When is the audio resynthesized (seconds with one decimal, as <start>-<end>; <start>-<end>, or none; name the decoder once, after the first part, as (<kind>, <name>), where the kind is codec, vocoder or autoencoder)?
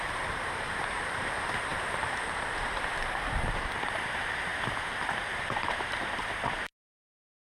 0.0-4.5 (vocoder, BigVGAN v2); 5.4-7.4